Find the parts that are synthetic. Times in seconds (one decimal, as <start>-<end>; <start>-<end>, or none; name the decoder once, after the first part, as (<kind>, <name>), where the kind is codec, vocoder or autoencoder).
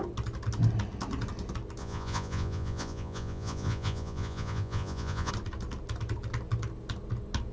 1.8-5.3 (vocoder, Vocos)